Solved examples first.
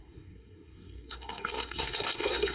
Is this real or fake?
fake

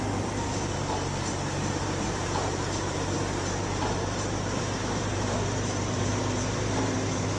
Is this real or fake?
fake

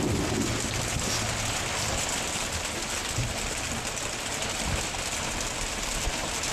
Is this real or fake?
real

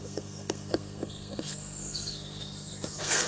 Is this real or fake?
fake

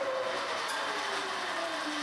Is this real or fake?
real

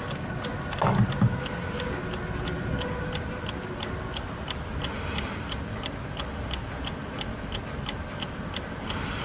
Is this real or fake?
real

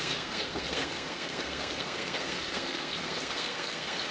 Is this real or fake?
fake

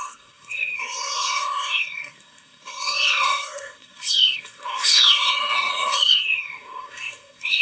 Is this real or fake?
fake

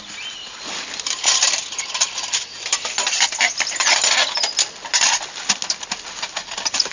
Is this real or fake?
real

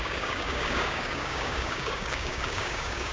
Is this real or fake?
fake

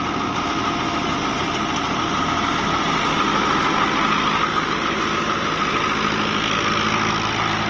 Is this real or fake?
real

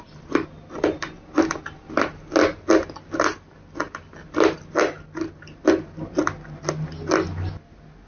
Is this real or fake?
real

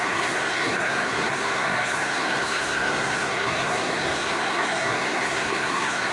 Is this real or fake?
fake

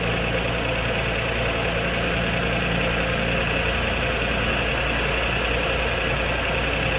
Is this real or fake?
real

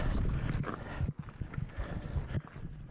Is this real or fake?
real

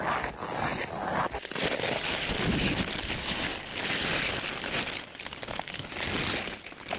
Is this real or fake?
real